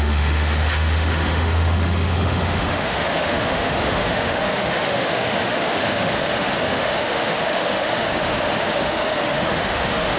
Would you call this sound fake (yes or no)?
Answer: yes